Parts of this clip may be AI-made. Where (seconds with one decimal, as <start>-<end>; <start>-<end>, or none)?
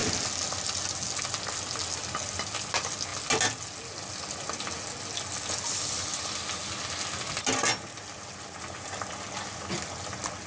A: none